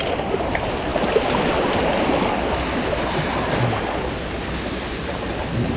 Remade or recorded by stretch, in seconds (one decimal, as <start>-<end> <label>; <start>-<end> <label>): 0.0-5.8 recorded